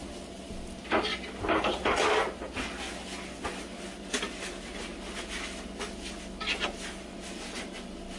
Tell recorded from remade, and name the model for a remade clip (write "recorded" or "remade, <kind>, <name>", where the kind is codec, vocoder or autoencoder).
recorded